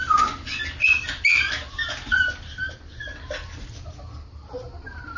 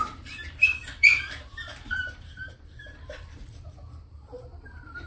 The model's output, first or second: second